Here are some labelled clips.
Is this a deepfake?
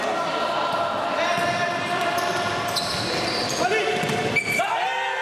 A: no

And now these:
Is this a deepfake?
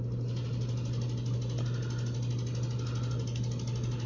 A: no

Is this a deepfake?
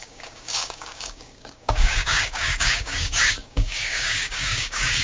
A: yes